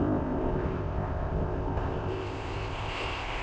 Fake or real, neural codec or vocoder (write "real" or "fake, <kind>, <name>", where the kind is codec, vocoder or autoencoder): fake, codec, ZipCodec